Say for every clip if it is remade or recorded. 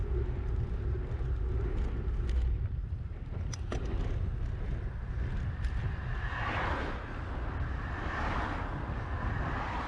recorded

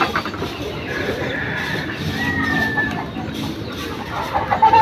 recorded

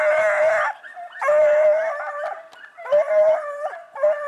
recorded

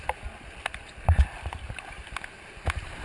recorded